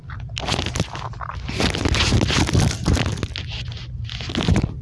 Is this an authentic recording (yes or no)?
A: yes